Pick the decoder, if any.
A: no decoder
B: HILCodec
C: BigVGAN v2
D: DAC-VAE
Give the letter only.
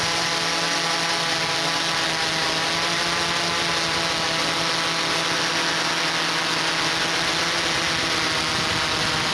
A